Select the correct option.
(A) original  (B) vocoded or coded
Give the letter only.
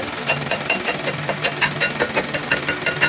A